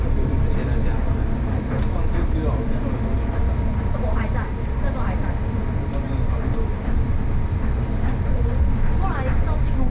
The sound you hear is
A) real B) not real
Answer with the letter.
A